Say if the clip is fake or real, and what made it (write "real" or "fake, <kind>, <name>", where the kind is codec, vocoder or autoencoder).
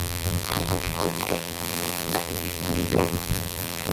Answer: fake, vocoder, BigVGAN v2